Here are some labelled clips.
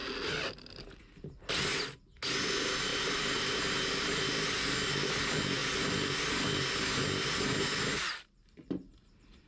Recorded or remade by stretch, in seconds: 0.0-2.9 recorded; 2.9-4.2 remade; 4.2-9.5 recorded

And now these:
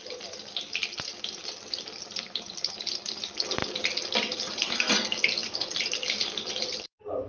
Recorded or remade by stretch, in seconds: 0.0-1.1 remade; 1.1-1.7 recorded; 1.7-7.3 remade

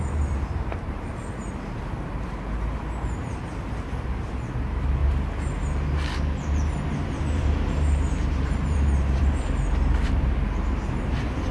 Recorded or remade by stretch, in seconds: 0.0-5.0 remade; 5.0-6.3 recorded; 6.3-11.5 remade

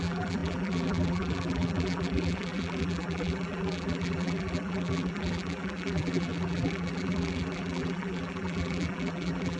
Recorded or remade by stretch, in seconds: 0.0-9.6 remade

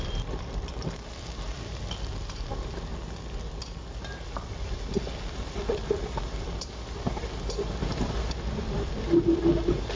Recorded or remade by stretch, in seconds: 0.0-2.9 remade; 2.9-4.7 recorded; 4.7-10.0 remade

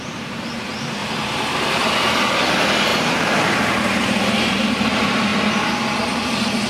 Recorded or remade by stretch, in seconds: 0.0-1.0 recorded; 1.0-1.9 remade; 1.9-2.9 recorded; 2.9-4.3 remade; 4.3-6.7 recorded

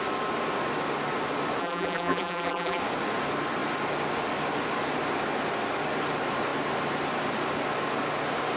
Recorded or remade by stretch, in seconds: 0.0-1.6 recorded; 1.6-2.8 remade; 2.8-8.6 recorded